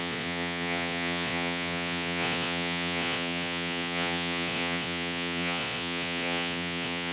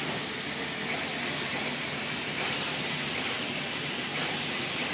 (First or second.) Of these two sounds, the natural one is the second